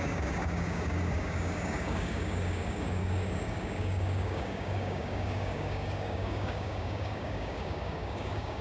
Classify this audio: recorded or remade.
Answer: remade